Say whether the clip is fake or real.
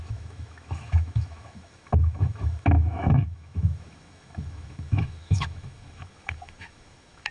fake